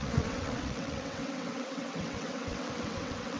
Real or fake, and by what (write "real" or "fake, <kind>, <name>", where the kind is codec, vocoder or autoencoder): fake, vocoder, WaveNeXt